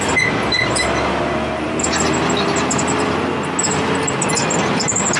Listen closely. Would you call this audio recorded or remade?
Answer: recorded